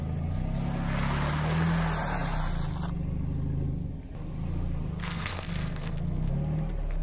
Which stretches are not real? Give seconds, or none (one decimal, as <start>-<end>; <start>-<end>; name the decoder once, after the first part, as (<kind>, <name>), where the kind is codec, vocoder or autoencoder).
5.0-6.3 (codec, SNAC)